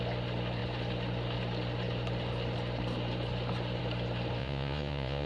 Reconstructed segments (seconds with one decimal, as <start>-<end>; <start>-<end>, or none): 4.4-5.3